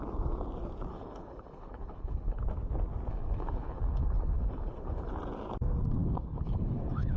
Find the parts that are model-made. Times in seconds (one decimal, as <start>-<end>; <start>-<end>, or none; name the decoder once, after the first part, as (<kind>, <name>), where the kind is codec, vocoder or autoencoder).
0.9-2.4 (codec, HILCodec); 3.1-5.1; 6.0-7.2